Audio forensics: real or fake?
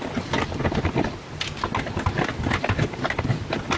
real